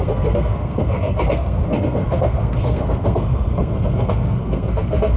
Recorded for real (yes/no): no